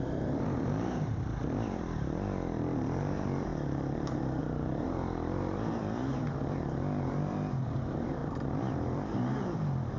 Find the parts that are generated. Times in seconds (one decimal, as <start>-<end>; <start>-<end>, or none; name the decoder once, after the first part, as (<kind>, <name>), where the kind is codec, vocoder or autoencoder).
0.0-3.5 (vocoder, BigVGAN v2); 4.4-10.0

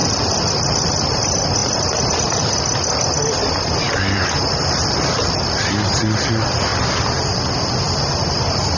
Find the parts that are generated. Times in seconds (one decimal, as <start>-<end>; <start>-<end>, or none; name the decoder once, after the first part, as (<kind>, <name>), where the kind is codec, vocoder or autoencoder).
0.0-0.5 (vocoder, BigVGAN v2); 6.7-7.6